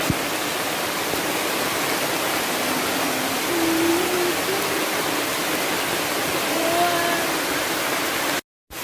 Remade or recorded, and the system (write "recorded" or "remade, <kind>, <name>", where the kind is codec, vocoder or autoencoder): recorded